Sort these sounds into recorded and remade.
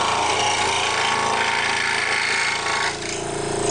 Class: recorded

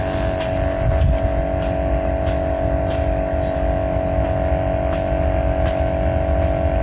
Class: recorded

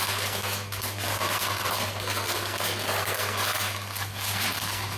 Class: remade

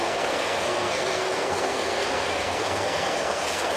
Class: remade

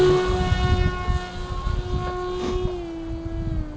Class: recorded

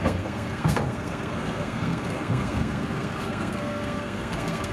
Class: remade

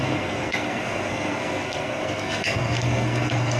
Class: remade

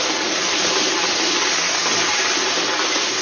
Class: recorded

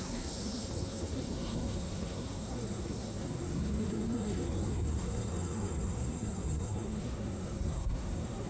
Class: remade